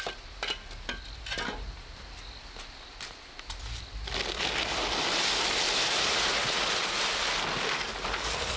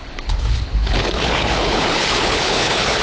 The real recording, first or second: first